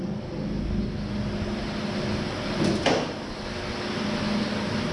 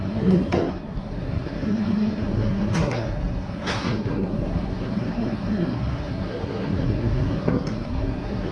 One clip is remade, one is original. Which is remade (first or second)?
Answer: second